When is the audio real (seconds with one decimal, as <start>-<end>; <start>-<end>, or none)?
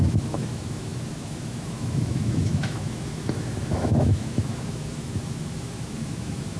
none